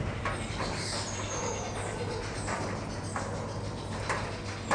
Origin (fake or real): real